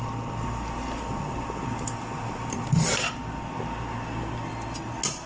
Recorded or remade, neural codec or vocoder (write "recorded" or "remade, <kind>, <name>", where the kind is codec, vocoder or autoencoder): recorded